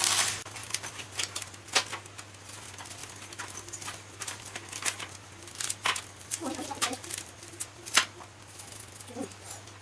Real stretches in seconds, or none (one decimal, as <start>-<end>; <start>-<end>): 0.0-0.6; 1.2-6.4; 8.8-9.8